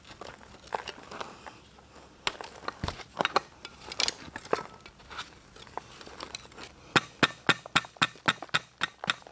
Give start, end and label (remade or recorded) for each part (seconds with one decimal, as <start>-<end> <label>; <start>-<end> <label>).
0.0-9.3 recorded